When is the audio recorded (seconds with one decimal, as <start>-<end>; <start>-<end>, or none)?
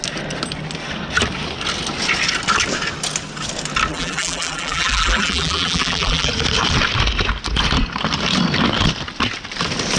0.0-3.9; 6.3-10.0